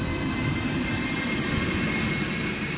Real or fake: real